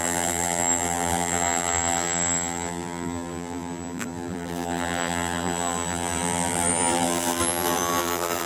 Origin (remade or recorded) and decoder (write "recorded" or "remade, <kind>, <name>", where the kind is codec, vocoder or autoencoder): remade, vocoder, BigVGAN v2